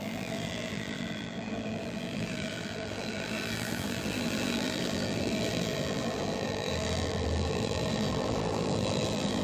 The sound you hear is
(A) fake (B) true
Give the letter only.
A